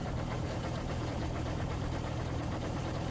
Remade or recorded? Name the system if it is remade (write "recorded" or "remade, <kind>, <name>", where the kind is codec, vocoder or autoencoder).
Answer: remade, vocoder, BigVGAN v2